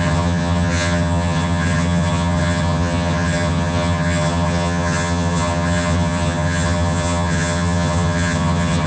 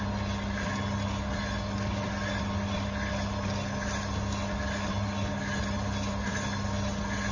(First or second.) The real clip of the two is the second